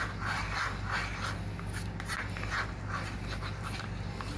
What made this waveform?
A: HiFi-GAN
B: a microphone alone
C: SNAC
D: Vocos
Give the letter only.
B